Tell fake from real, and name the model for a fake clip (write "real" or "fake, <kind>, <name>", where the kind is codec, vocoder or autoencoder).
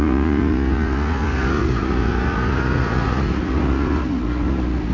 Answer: fake, vocoder, Vocos